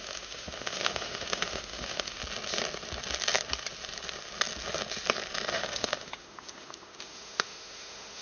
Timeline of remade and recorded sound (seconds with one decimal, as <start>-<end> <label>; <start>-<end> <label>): 0.0-2.2 remade; 2.2-5.5 recorded; 5.5-8.2 remade

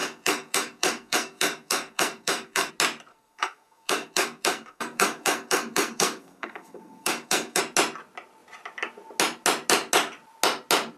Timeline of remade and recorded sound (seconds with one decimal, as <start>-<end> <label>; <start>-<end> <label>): 0.0-2.7 remade; 2.7-3.1 recorded; 3.1-7.6 remade; 7.6-11.0 recorded

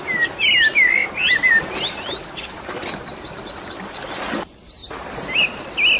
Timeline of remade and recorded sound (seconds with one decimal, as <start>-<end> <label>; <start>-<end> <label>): 0.0-6.0 recorded

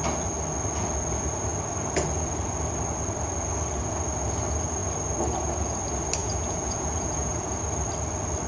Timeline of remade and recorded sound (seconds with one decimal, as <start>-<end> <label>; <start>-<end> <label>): 0.0-6.2 recorded; 6.2-7.6 remade; 7.6-8.5 recorded

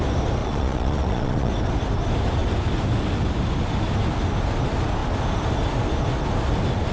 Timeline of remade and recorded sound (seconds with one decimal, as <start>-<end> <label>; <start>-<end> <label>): 0.0-0.4 recorded; 0.4-1.5 remade; 1.5-6.9 recorded